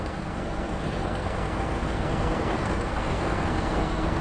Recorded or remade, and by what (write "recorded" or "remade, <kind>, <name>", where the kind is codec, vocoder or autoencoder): remade, codec, SNAC